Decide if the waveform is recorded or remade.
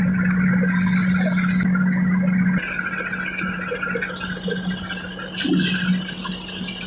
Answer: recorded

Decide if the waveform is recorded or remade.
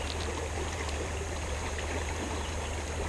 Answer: recorded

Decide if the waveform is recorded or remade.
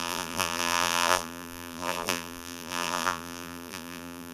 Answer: remade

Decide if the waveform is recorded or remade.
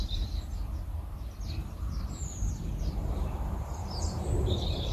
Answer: remade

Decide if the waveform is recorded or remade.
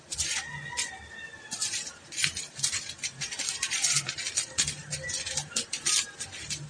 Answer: remade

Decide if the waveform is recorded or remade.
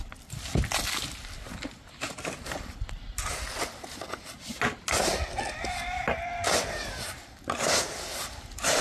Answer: recorded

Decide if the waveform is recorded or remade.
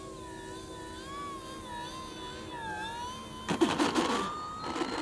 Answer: recorded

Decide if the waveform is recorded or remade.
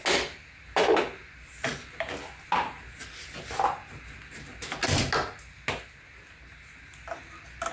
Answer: recorded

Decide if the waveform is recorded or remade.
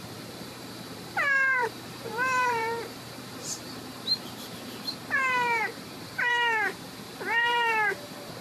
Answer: remade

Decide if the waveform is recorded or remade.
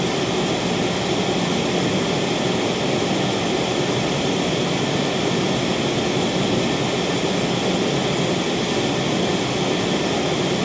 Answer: recorded